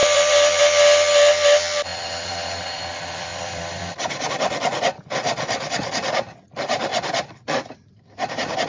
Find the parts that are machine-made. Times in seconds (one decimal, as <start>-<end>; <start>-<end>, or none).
0.0-0.6; 1.9-2.8; 3.3-4.3; 6.9-8.0